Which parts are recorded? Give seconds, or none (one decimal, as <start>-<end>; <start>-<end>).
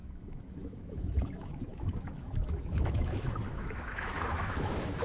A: none